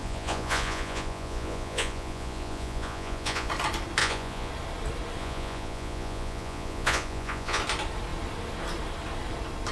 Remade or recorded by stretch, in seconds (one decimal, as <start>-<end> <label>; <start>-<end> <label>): 0.0-3.5 remade; 3.5-4.0 recorded; 4.0-4.5 remade; 4.5-5.2 recorded; 5.2-7.6 remade; 7.6-9.7 recorded